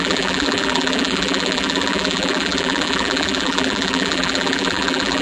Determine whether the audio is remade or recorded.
remade